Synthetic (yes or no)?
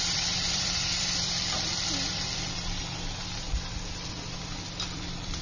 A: yes